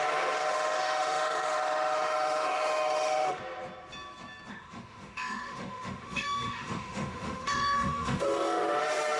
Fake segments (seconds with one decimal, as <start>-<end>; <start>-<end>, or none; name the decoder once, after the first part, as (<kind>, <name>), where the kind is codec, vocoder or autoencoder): 0.0-3.4 (autoencoder, DAC-VAE); 4.5-9.2